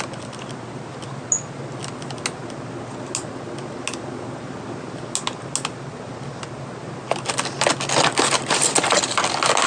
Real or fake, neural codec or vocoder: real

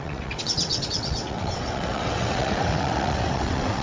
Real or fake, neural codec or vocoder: fake, vocoder, WaveNeXt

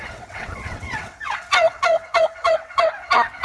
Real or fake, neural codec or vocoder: fake, vocoder, WaveNeXt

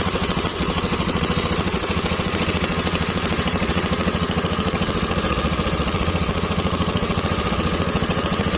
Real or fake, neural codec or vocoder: fake, vocoder, WaveNeXt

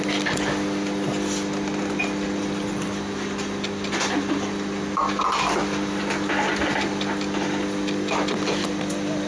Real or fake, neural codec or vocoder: real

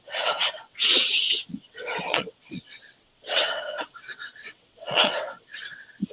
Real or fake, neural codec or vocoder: fake, vocoder, WaveNeXt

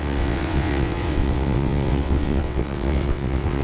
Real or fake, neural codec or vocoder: fake, vocoder, WaveNeXt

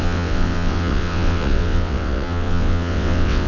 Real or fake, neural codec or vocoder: fake, vocoder, WaveNeXt